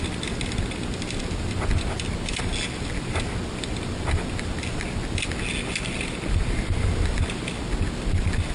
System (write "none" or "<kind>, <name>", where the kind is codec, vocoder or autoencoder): none